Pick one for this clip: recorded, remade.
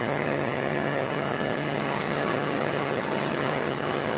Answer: remade